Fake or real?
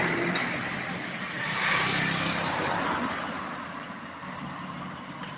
real